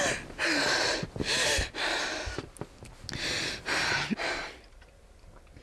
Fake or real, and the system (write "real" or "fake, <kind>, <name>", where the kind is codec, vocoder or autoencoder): real